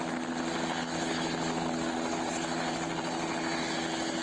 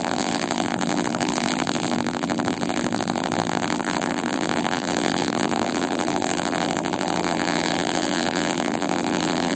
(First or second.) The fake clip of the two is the second